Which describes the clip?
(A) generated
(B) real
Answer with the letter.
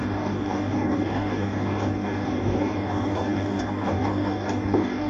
A